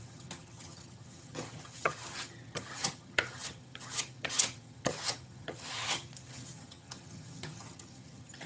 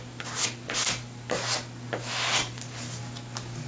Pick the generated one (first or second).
first